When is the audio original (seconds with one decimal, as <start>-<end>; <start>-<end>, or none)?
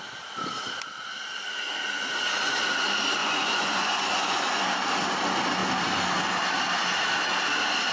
0.0-3.2; 4.6-7.9